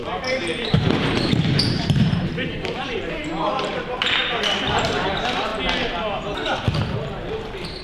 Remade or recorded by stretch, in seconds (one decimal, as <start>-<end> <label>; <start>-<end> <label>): 0.0-0.4 recorded; 0.4-5.1 remade; 5.1-7.8 recorded